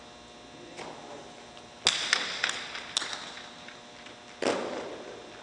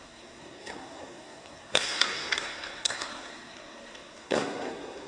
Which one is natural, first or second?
first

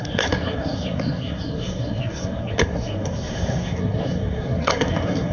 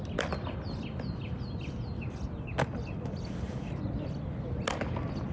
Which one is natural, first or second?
second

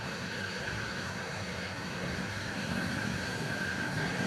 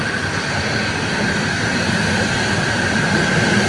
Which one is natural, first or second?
second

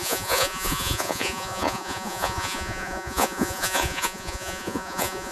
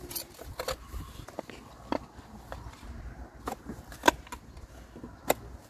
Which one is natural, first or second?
second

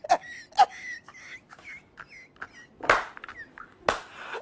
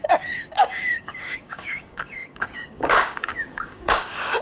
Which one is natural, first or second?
first